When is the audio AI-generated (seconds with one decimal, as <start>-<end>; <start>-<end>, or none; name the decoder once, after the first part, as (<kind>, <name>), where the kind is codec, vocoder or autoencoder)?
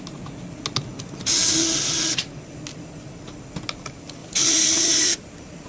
4.2-5.7 (vocoder, BigVGAN v2)